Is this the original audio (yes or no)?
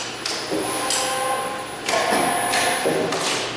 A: yes